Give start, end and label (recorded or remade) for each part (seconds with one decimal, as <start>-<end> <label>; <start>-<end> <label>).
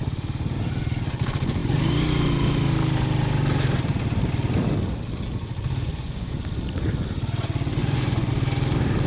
0.0-5.9 recorded; 5.9-6.4 remade; 6.4-7.8 recorded; 7.8-8.3 remade; 8.3-9.1 recorded